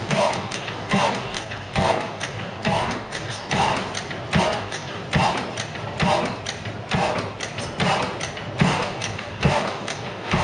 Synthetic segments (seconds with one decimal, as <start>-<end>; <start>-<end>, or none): 0.0-3.7; 4.4-5.0; 8.6-10.4